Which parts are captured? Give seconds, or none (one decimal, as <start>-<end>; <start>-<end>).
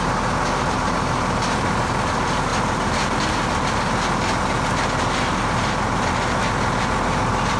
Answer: 0.0-7.6